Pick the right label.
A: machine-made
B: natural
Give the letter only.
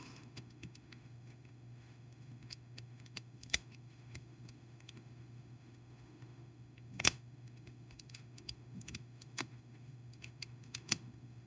A